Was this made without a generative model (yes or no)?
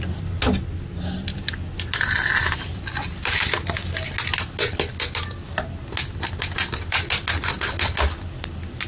yes